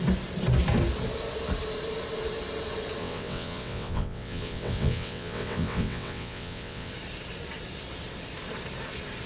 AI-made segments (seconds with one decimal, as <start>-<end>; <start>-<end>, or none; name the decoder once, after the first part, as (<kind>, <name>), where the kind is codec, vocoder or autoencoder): 3.0-6.9 (vocoder, WaveNeXt)